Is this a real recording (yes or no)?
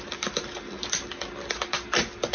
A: yes